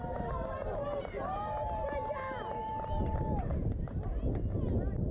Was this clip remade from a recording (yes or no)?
yes